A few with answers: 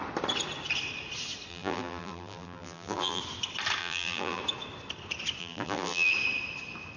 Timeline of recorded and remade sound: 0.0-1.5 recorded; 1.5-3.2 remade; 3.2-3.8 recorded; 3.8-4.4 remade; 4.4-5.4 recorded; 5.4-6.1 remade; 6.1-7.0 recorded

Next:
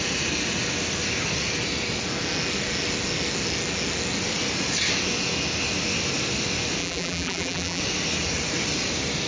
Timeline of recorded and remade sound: 0.0-6.8 recorded; 6.8-7.8 remade; 7.8-9.3 recorded

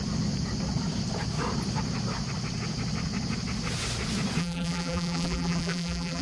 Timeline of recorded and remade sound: 0.0-4.4 recorded; 4.4-6.2 remade